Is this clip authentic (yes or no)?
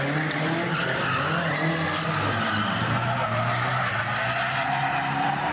yes